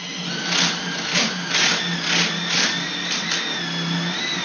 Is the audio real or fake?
real